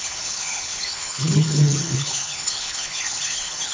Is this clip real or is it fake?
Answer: fake